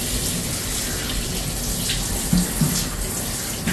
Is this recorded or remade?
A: recorded